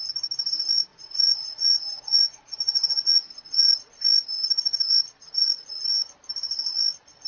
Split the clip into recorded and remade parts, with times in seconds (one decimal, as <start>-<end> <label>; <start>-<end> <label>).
0.0-0.9 recorded; 0.9-4.0 remade; 4.0-5.1 recorded; 5.1-5.8 remade; 5.8-7.3 recorded